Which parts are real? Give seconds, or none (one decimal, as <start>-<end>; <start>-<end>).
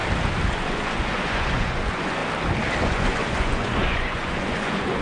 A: 0.0-0.5; 2.2-2.8